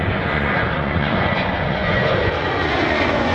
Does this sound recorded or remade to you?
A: remade